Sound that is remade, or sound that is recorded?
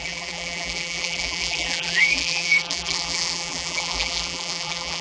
remade